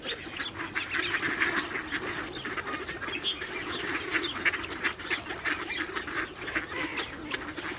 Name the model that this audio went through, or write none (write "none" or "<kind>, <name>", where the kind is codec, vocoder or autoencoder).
none